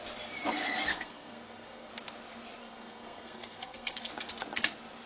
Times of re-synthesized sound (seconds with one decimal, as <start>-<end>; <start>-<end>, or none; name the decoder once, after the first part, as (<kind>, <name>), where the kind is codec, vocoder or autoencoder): 0.9-1.9 (codec, SNAC); 2.6-4.1